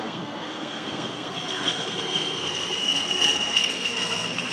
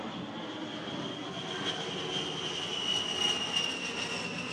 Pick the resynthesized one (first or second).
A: first